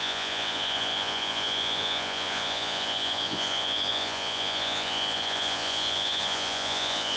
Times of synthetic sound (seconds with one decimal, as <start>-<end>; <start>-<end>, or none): 0.0-7.2